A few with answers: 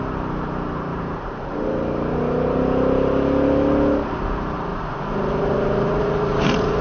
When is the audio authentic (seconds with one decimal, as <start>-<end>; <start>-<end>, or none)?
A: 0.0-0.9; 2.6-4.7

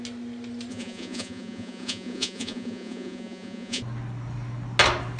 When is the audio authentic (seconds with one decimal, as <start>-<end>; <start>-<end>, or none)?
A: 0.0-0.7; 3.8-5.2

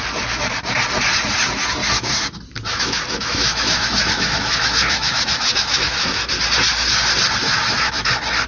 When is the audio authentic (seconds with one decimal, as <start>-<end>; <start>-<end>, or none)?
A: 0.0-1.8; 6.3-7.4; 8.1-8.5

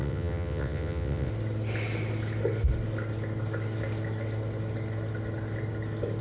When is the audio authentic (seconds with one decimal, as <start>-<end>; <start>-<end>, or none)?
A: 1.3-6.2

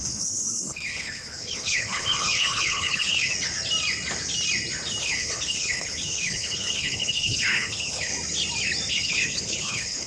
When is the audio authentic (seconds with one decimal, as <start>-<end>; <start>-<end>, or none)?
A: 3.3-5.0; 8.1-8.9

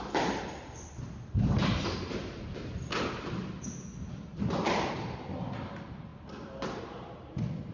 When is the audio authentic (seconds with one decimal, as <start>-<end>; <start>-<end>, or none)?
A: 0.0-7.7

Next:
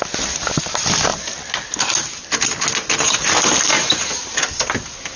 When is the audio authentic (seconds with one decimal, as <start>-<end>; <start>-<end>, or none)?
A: 0.0-5.2

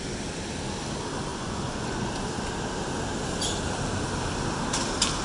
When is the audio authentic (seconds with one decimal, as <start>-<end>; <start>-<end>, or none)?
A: 0.0-1.3; 2.1-5.2